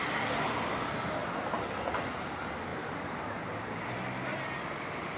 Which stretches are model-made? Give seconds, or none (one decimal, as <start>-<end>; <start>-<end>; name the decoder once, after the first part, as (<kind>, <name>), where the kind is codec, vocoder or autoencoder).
1.2-1.8 (vocoder, BigVGAN v2); 2.7-3.9